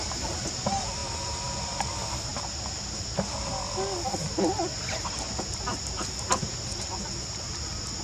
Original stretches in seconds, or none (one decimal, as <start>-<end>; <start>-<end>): 0.0-8.0

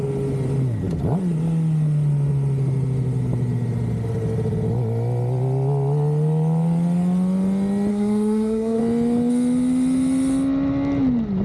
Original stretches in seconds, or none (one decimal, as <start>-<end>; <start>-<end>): 0.0-7.9; 8.8-11.4

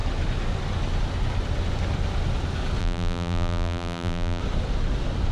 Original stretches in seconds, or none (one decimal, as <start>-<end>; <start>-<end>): 0.0-2.8; 4.4-5.3

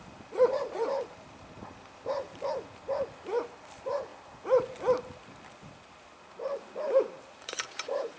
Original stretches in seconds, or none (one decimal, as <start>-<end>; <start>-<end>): 2.7-3.6; 4.1-7.0